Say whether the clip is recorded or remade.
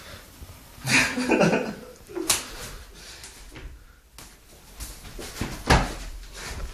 recorded